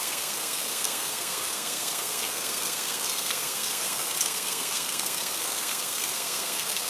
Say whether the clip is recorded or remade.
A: remade